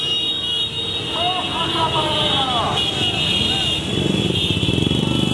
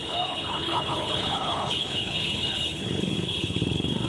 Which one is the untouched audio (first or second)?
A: first